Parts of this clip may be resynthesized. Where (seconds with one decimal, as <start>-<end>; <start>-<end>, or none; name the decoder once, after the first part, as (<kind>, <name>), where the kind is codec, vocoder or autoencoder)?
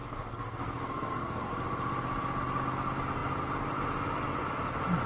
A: 0.0-1.5 (codec, SNAC)